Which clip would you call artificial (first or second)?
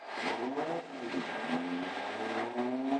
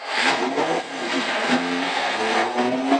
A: second